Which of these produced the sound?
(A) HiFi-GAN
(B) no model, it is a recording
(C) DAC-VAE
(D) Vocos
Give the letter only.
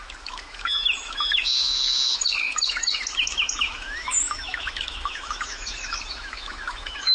C